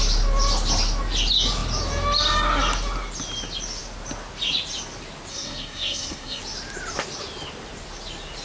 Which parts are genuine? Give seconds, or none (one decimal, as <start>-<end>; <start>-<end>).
0.0-5.3; 6.4-8.4